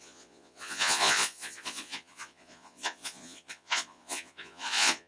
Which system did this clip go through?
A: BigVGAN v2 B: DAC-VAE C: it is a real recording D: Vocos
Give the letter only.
D